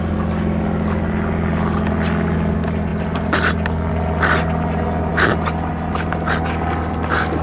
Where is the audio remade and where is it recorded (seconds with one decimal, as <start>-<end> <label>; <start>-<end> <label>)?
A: 0.0-7.4 recorded